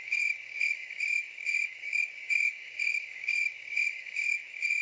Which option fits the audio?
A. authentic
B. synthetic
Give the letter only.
B